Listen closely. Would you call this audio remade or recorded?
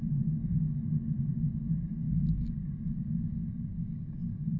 remade